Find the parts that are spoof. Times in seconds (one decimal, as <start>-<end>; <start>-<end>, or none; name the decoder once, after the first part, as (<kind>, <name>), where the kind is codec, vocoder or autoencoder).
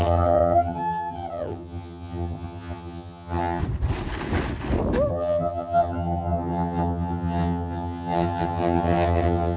0.0-3.6 (vocoder, HiFi-GAN); 5.1-9.6